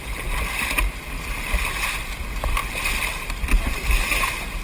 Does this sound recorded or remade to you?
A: recorded